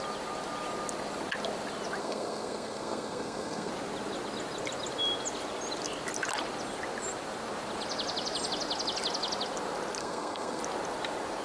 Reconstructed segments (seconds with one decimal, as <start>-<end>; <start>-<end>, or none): 2.0-3.7; 10.0-10.6